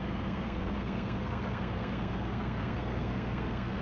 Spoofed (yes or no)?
yes